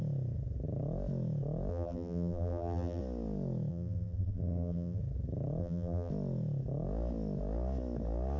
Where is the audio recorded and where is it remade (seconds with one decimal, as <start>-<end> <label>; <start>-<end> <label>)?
0.0-1.7 recorded; 1.7-3.0 remade; 3.0-3.7 recorded; 3.7-5.0 remade; 5.0-5.6 recorded; 5.6-6.1 remade; 6.1-8.4 recorded